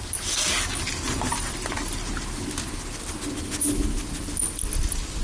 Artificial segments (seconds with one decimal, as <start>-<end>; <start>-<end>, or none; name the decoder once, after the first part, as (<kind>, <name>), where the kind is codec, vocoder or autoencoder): none

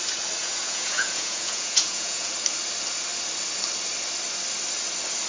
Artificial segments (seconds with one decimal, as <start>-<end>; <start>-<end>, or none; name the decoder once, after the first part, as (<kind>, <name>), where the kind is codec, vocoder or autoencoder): 0.4-2.3 (vocoder, Vocos)

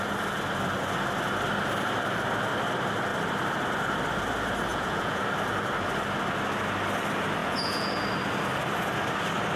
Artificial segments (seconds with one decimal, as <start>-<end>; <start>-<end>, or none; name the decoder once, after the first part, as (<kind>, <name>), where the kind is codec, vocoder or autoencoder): 4.7-5.2 (vocoder, Vocos); 7.4-8.0

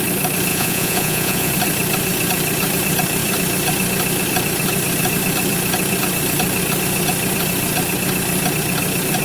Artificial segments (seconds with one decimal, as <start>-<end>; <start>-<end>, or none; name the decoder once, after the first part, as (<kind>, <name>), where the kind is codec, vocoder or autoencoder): 0.5-1.5 (vocoder, Vocos)

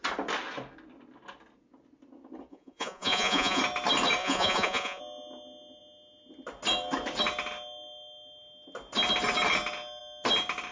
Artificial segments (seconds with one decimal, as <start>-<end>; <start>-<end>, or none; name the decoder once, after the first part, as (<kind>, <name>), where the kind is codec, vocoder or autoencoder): 2.5-3.6 (vocoder, Vocos); 4.2-5.0

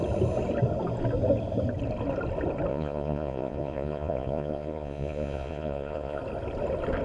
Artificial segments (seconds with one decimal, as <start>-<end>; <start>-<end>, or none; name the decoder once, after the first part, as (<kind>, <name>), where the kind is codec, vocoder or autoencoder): 2.7-6.2 (vocoder, Vocos)

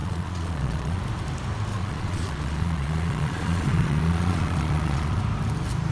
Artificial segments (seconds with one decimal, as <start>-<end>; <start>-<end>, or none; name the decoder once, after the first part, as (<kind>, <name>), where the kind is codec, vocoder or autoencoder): 0.0-1.0 (vocoder, Vocos); 1.7-5.2

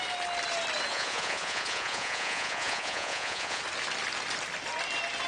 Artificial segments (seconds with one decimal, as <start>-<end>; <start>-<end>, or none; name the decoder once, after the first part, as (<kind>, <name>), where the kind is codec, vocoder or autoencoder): 0.9-3.6 (vocoder, Vocos)